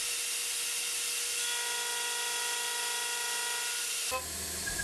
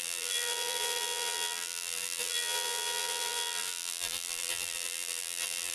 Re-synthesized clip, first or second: second